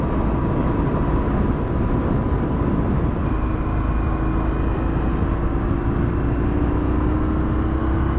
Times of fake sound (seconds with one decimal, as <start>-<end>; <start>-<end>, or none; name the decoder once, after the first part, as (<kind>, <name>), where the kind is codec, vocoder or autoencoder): none